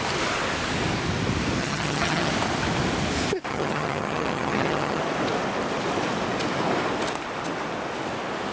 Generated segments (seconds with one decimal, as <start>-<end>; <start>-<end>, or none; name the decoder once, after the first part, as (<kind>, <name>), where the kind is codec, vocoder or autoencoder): 1.6-2.3 (vocoder, HiFi-GAN); 3.5-5.0